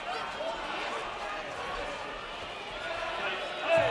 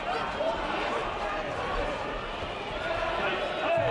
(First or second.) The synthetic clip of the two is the second